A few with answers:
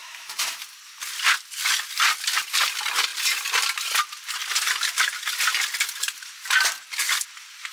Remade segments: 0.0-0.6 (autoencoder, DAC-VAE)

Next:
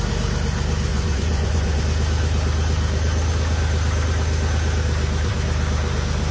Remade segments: 0.9-1.8 (vocoder, Vocos)

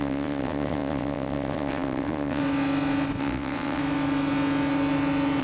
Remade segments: 0.0-2.4 (vocoder, WaveNeXt); 3.2-3.8

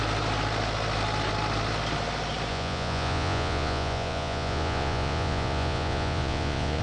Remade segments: 2.5-6.8 (vocoder, Vocos)

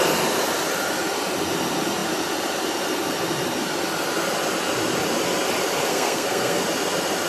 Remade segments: 5.9-6.6 (codec, SNAC)

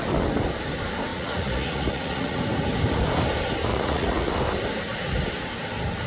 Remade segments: 1.1-2.4 (vocoder, Vocos); 3.7-4.3

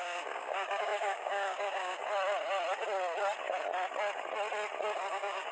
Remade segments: 0.0-2.0 (codec, DAC); 5.1-5.5